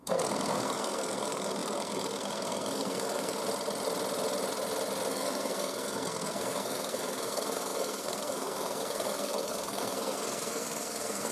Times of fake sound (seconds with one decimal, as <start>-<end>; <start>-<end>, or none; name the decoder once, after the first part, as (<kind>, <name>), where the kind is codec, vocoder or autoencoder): 0.0-3.4 (codec, SNAC); 5.1-11.3